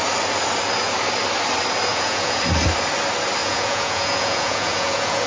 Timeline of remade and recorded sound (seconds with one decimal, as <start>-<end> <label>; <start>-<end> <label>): 0.0-1.9 recorded; 1.9-2.4 remade; 2.4-3.4 recorded; 3.4-5.3 remade